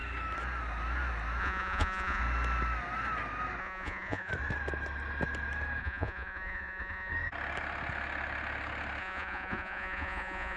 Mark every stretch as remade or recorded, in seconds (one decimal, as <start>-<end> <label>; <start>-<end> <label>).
0.0-1.4 recorded; 1.4-2.2 remade; 2.2-3.6 recorded; 3.6-4.3 remade; 4.3-5.8 recorded; 5.8-7.1 remade; 7.1-9.0 recorded; 9.0-10.6 remade